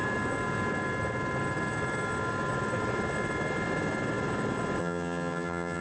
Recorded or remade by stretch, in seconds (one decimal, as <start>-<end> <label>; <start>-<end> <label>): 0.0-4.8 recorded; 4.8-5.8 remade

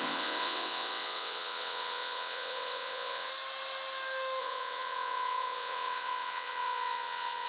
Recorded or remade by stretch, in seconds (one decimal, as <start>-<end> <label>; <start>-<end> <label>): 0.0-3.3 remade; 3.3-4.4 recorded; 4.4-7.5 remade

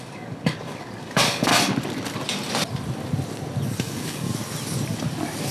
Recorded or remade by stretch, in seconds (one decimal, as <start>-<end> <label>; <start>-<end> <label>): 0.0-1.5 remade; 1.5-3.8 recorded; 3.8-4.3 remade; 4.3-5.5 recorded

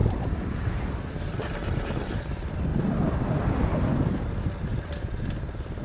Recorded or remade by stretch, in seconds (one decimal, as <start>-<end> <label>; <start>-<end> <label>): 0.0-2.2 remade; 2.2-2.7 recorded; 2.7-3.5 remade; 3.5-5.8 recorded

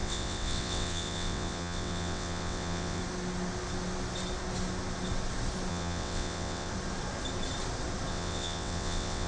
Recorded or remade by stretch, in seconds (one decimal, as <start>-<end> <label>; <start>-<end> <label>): 0.0-3.0 remade; 3.0-5.7 recorded; 5.7-6.7 remade; 6.7-8.1 recorded; 8.1-9.3 remade

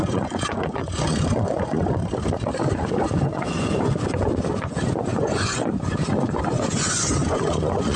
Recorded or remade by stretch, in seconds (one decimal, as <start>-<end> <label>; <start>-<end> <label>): 0.0-2.0 remade; 2.0-2.7 recorded; 2.7-8.0 remade

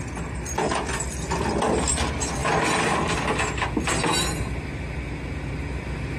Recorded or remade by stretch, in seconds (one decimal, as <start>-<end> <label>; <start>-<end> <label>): 0.0-6.2 recorded

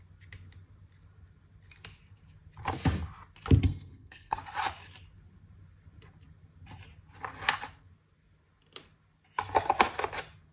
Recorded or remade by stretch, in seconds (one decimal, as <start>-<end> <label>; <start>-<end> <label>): 0.0-3.6 recorded; 3.6-4.4 remade; 4.4-10.5 recorded